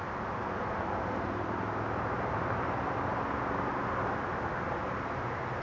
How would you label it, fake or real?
real